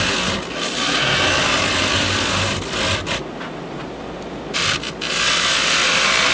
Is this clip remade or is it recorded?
recorded